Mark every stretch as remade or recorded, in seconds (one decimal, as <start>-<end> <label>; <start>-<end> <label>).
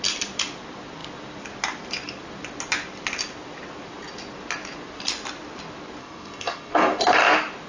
0.0-6.0 recorded; 6.0-7.0 remade; 7.0-7.7 recorded